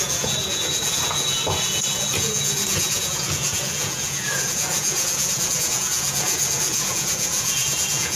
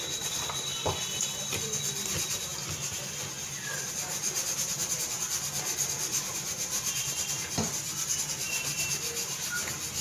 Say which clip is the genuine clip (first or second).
second